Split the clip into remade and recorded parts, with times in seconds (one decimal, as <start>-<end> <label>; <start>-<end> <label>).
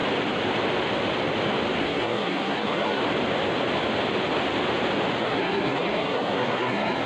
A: 0.0-1.8 recorded; 1.8-3.0 remade; 3.0-5.2 recorded; 5.2-7.1 remade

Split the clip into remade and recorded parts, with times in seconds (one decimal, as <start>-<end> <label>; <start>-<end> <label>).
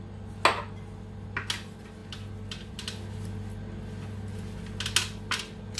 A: 0.0-5.8 recorded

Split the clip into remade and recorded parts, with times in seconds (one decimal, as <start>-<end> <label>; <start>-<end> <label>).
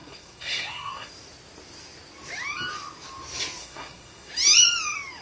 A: 0.0-1.1 remade; 1.1-3.6 recorded; 3.6-4.3 remade; 4.3-5.2 recorded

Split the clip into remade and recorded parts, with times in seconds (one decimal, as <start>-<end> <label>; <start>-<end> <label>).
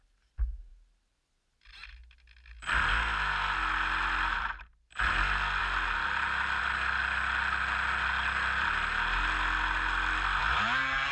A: 0.0-11.1 recorded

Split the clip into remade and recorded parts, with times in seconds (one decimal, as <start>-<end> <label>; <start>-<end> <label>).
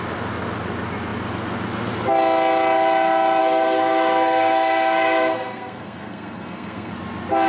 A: 0.0-3.4 recorded; 3.4-6.9 remade; 6.9-7.5 recorded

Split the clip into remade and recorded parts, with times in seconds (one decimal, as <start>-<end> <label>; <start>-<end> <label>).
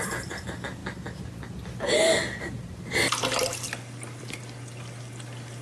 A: 0.0-5.6 recorded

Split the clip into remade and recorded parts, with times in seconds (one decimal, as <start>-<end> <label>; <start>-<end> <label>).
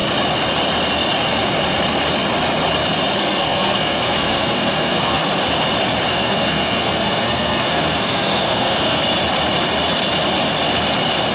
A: 0.0-3.2 recorded; 3.2-5.2 remade; 5.2-6.1 recorded; 6.1-9.0 remade; 9.0-11.3 recorded